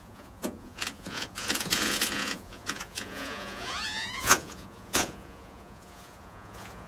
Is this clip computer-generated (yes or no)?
yes